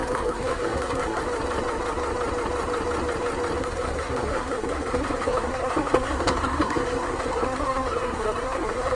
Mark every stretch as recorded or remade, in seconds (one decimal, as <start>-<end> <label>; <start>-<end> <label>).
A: 0.0-1.2 remade; 1.2-3.6 recorded; 3.6-9.0 remade